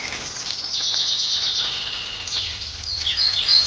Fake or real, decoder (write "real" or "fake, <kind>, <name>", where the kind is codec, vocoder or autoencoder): real